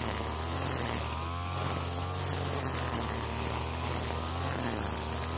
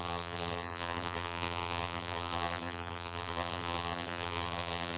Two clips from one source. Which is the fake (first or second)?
second